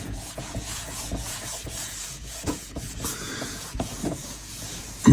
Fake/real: fake